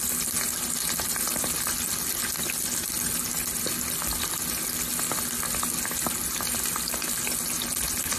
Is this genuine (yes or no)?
yes